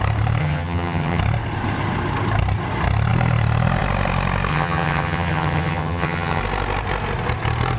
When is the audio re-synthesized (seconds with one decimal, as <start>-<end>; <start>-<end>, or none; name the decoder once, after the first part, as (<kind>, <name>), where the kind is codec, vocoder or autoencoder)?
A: 0.4-1.2 (vocoder, HiFi-GAN); 4.5-6.4